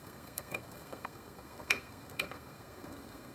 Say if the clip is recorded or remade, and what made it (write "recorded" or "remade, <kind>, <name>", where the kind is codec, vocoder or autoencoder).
remade, codec, SNAC